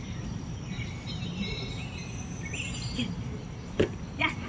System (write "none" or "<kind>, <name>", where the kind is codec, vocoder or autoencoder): vocoder, BigVGAN v2